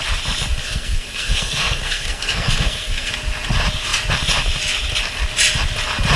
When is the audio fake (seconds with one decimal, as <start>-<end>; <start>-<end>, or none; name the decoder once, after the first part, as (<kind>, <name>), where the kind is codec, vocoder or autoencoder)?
0.6-3.1 (codec, SNAC)